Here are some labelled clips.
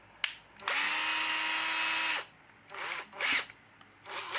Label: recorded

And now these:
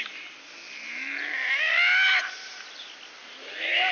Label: recorded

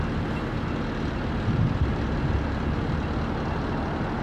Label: recorded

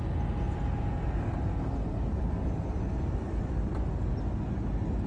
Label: recorded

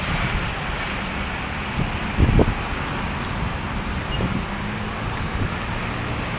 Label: recorded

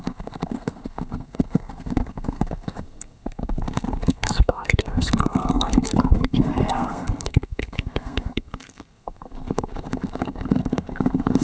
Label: remade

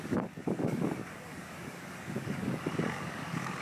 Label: remade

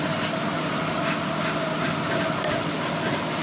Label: recorded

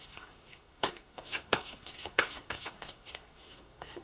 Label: remade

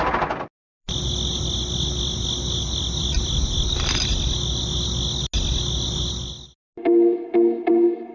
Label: recorded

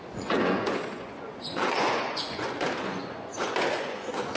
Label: remade